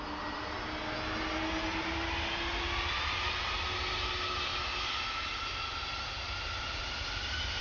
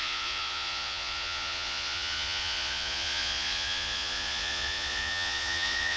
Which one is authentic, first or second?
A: first